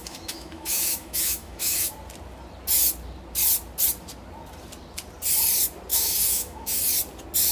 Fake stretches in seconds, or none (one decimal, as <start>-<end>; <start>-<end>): 0.0-1.9; 5.9-6.8